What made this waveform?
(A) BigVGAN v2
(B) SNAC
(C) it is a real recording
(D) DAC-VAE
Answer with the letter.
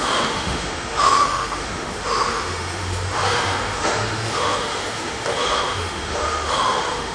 D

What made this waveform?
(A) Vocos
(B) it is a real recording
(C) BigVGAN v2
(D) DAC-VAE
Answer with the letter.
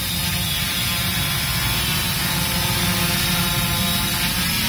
B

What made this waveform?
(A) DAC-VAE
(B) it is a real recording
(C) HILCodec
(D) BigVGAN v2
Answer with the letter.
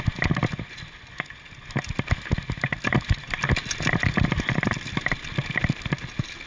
B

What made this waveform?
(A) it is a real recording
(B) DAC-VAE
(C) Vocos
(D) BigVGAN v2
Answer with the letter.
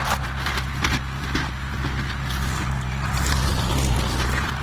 A